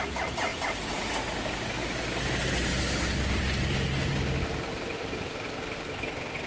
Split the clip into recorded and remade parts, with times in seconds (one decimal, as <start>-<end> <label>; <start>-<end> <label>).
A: 0.0-6.5 recorded